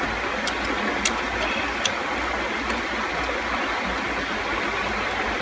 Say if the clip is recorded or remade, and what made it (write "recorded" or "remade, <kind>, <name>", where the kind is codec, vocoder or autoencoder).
recorded